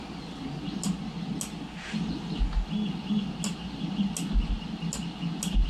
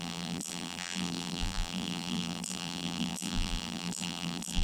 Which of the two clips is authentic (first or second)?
first